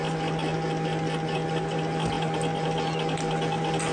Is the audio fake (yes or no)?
no